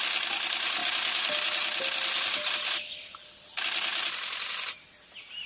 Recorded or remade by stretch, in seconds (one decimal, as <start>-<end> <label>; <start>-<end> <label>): 0.0-5.5 recorded